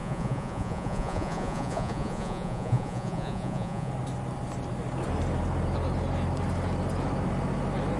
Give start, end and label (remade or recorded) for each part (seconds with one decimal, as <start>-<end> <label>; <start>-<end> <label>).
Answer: 0.0-3.9 remade; 3.9-8.0 recorded